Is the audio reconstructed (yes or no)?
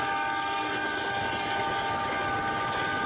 no